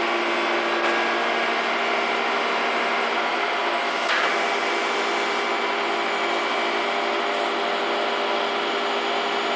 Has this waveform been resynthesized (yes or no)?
no